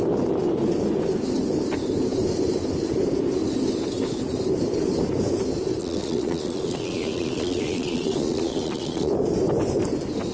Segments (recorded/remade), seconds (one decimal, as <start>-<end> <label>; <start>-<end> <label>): 0.0-5.8 recorded; 5.8-9.1 remade; 9.1-10.3 recorded